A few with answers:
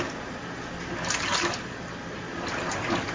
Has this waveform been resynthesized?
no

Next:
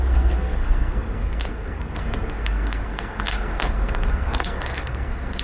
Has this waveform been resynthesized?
yes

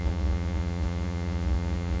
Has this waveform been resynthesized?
yes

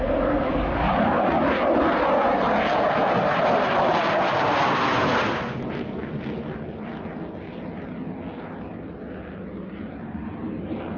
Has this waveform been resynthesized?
no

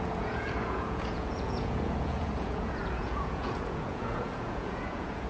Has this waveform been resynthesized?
yes